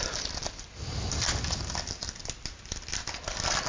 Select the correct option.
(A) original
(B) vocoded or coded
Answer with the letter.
A